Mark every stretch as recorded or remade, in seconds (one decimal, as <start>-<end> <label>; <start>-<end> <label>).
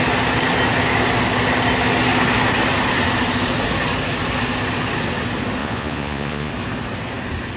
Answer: 0.0-5.6 recorded; 5.6-6.5 remade; 6.5-7.6 recorded